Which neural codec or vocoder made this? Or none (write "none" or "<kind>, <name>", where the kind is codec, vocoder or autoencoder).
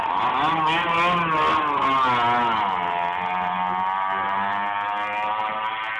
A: none